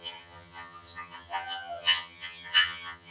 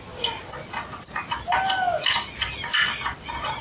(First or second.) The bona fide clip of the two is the second